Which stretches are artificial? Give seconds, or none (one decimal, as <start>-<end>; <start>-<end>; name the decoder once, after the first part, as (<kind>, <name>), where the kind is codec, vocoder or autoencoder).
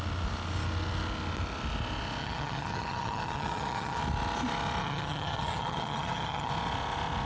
2.2-4.0 (vocoder, HiFi-GAN); 4.8-6.5